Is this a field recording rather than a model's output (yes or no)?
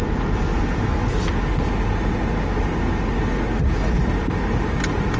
yes